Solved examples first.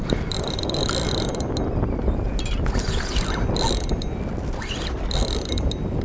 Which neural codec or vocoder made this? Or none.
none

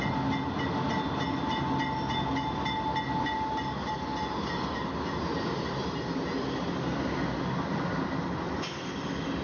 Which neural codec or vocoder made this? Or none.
none